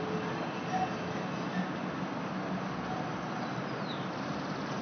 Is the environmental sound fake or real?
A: real